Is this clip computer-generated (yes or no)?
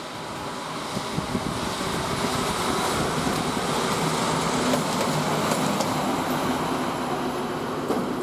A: no